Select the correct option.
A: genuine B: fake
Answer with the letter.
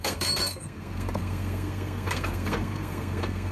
B